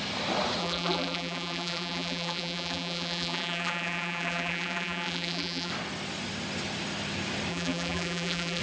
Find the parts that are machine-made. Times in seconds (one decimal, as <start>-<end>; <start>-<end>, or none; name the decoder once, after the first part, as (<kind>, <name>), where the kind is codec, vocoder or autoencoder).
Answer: 0.6-5.7 (vocoder, BigVGAN v2); 7.5-8.6